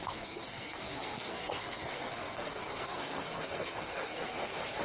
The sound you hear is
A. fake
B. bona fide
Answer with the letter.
A